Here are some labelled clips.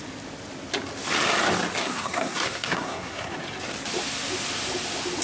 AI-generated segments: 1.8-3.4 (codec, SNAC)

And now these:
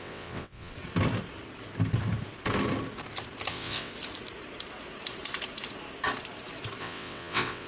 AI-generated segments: 0.0-0.7 (vocoder, WaveNeXt); 3.5-3.9; 6.8-7.7

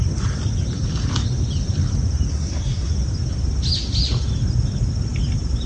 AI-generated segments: 2.3-2.9 (codec, SNAC)

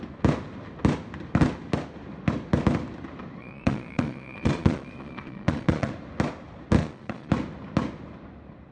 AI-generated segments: 3.4-5.9 (vocoder, Vocos); 6.8-7.3

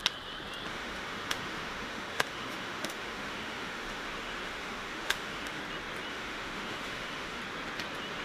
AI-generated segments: 0.7-5.6 (autoencoder, DAC-VAE); 6.1-7.4

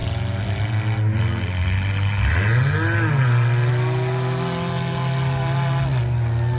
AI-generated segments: none

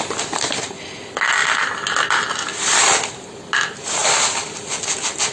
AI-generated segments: none

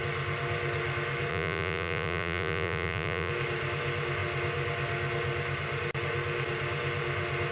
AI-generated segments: 1.3-3.3 (vocoder, Vocos)